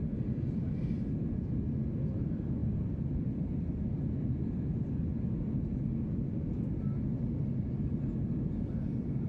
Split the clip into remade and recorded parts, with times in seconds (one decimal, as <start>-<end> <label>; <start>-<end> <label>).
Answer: 0.0-2.6 recorded; 2.6-4.5 remade; 4.5-9.3 recorded